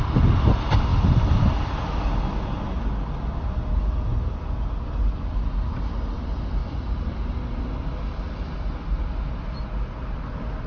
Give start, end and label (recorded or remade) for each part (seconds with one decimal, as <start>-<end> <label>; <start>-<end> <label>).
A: 0.0-10.7 recorded